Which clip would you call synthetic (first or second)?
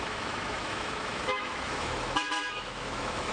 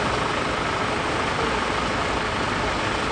first